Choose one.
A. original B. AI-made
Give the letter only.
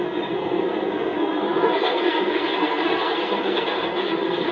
B